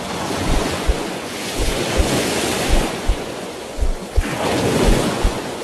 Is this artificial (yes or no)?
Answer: yes